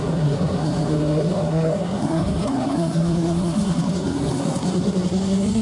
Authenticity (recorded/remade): remade